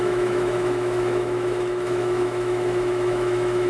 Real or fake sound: fake